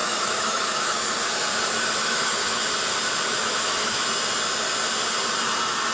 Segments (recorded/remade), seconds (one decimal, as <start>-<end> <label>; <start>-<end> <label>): 0.0-1.0 remade; 1.0-2.0 recorded; 2.0-2.6 remade; 2.6-3.3 recorded; 3.3-4.0 remade; 4.0-5.9 recorded